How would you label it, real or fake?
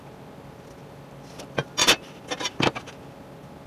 real